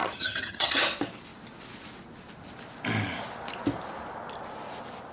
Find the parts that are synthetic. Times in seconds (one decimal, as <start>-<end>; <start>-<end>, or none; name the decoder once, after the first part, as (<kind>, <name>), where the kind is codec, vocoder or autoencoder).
0.0-0.8 (vocoder, HiFi-GAN)